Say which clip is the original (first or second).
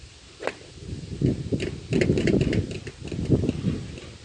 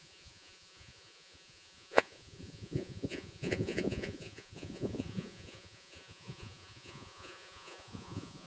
first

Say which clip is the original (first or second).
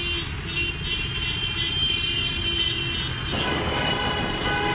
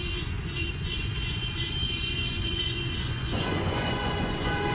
first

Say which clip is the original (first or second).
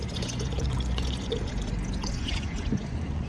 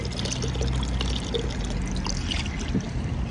second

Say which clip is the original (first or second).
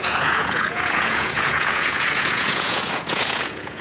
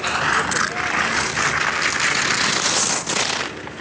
second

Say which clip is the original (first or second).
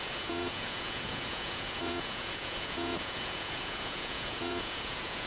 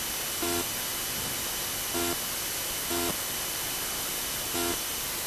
second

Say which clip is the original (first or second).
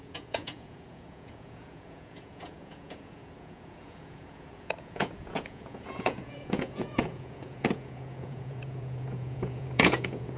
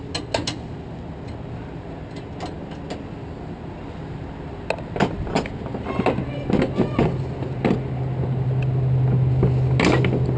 second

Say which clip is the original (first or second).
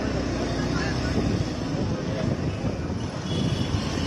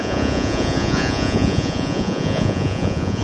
first